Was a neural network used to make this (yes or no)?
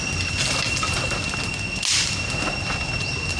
no